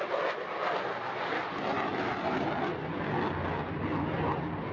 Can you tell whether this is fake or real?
real